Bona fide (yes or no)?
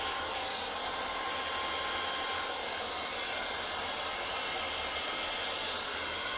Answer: yes